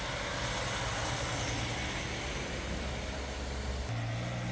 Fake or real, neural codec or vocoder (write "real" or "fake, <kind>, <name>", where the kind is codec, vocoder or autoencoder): real